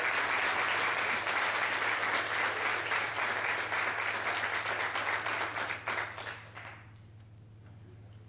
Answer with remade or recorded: recorded